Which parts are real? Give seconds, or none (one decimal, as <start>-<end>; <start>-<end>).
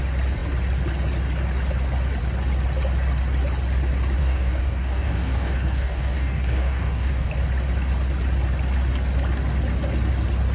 0.0-4.2; 7.3-10.5